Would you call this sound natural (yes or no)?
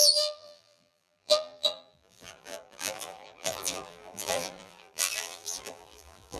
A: no